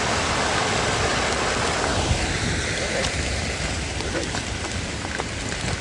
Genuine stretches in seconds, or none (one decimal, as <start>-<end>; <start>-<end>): 0.0-5.8